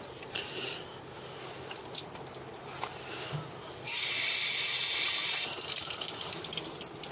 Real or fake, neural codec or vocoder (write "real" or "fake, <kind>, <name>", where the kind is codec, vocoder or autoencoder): real